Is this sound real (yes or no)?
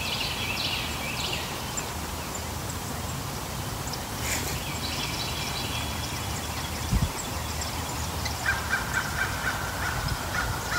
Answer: yes